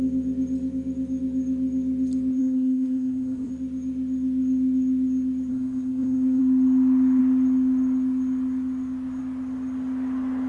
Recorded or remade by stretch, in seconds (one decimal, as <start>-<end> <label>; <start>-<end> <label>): 0.0-2.4 recorded; 2.4-3.5 remade; 3.5-5.5 recorded; 5.5-6.4 remade; 6.4-10.5 recorded